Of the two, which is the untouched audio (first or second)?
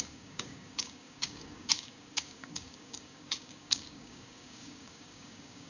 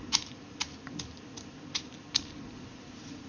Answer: second